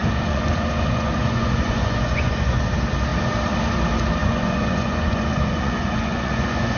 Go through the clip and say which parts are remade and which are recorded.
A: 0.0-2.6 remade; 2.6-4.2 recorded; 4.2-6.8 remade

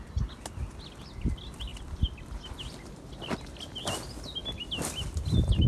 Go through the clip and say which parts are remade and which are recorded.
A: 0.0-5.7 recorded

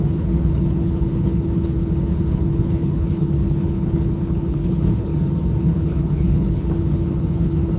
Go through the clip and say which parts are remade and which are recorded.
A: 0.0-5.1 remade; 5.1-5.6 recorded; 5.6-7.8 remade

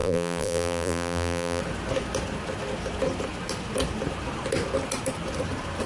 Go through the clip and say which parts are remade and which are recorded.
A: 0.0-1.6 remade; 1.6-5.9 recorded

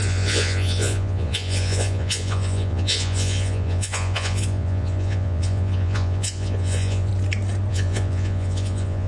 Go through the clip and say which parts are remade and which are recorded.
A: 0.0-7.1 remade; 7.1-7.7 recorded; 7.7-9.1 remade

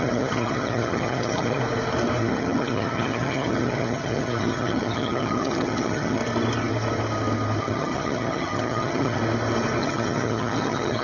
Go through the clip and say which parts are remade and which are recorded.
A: 0.0-1.6 remade; 1.6-2.2 recorded; 2.2-6.2 remade; 6.2-7.6 recorded; 7.6-9.2 remade; 9.2-9.8 recorded; 9.8-11.0 remade

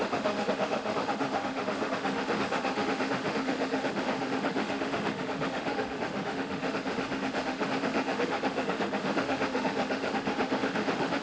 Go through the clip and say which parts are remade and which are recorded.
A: 0.0-11.2 remade